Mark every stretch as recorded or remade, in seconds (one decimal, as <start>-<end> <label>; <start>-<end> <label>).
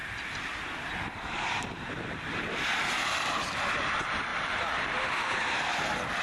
0.0-2.5 remade; 2.5-4.3 recorded; 4.3-5.8 remade; 5.8-6.2 recorded